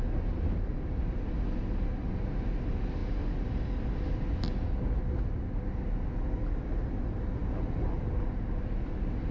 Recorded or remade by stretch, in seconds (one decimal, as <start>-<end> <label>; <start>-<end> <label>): 0.0-9.3 recorded